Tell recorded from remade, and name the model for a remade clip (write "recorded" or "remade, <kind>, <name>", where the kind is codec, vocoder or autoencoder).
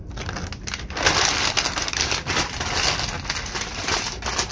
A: recorded